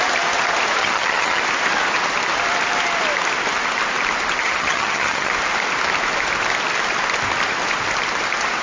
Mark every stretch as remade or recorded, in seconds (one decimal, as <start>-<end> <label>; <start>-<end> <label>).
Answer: 0.0-0.8 recorded; 0.8-1.4 remade; 1.4-4.4 recorded; 4.4-5.3 remade; 5.3-8.6 recorded